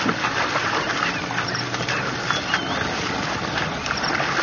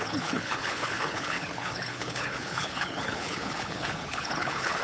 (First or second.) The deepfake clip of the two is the second